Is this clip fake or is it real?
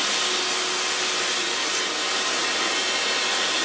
real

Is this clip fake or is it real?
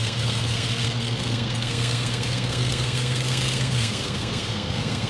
fake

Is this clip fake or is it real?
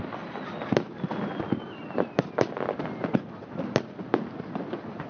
real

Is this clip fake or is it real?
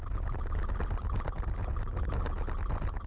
real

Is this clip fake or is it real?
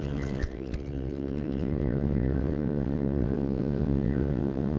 fake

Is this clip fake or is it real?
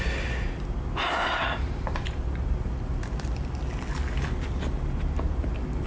real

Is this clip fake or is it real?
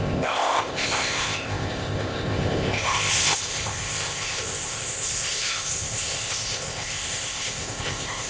fake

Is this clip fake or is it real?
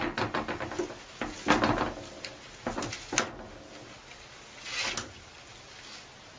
real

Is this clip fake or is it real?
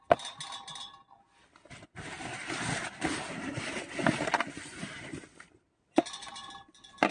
real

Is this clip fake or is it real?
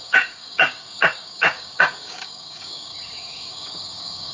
fake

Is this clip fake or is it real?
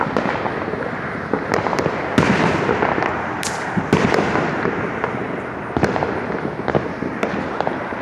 real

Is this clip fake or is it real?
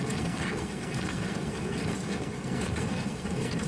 fake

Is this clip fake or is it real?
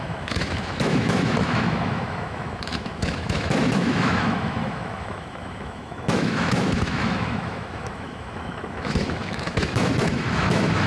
fake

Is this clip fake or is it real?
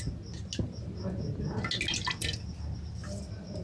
real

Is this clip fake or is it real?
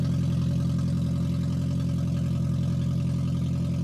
real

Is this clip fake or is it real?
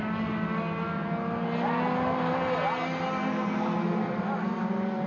real